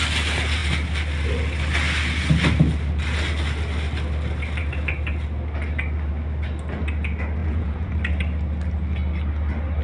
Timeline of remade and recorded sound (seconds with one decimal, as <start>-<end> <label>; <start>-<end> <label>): 0.0-7.4 recorded; 7.4-7.9 remade; 7.9-9.8 recorded